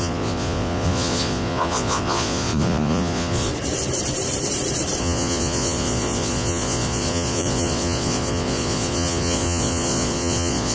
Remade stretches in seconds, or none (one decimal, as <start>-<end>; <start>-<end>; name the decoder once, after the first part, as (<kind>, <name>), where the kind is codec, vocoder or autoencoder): 0.0-3.5 (vocoder, Vocos); 5.0-10.7